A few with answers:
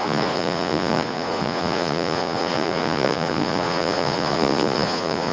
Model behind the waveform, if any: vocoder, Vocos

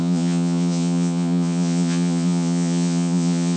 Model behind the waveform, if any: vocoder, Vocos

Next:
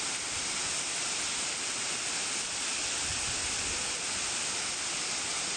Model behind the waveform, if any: none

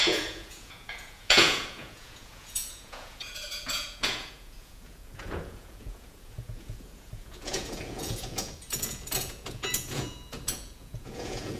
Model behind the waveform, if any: vocoder, Vocos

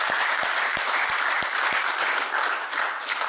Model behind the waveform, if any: none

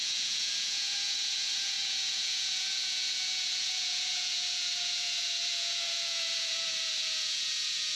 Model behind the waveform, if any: vocoder, Vocos